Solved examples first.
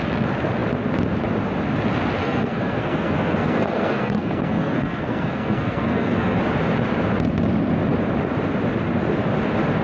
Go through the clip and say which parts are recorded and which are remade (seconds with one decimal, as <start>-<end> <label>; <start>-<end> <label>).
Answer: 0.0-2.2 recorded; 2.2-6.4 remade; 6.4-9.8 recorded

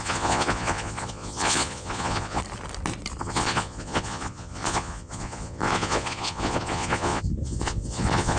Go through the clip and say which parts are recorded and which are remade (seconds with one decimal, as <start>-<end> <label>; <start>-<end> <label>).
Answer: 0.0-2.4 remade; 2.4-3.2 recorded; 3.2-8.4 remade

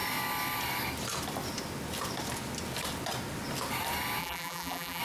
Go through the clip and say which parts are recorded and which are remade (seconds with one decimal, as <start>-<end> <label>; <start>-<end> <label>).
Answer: 0.0-4.2 recorded; 4.2-5.0 remade

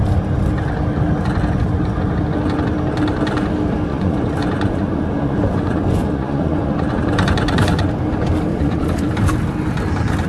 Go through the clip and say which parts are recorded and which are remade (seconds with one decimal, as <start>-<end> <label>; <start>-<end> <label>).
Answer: 0.0-3.9 recorded; 3.9-7.9 remade; 7.9-8.5 recorded; 8.5-9.1 remade; 9.1-10.3 recorded

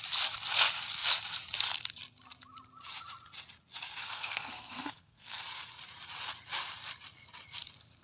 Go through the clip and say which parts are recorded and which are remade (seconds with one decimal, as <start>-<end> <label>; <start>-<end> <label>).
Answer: 0.0-4.0 recorded; 4.0-5.4 remade; 5.4-8.0 recorded